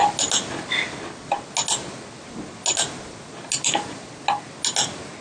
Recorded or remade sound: recorded